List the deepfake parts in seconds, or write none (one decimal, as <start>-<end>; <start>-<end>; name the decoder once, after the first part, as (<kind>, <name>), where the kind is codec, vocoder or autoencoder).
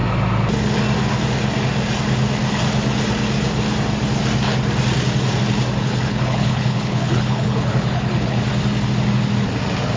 5.8-8.4 (codec, HILCodec)